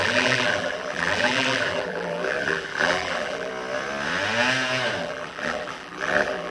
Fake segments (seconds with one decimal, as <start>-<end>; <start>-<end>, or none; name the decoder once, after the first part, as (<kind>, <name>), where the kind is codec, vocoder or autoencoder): 0.0-3.5 (vocoder, BigVGAN v2); 5.0-6.5